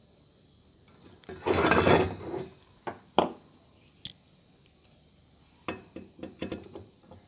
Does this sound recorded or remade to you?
recorded